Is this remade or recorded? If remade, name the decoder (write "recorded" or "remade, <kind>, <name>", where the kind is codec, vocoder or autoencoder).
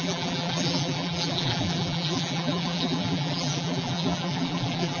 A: remade, vocoder, BigVGAN v2